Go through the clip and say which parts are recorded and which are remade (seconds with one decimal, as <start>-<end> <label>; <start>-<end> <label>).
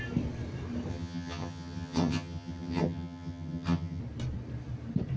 0.0-0.9 recorded; 0.9-4.0 remade; 4.0-5.2 recorded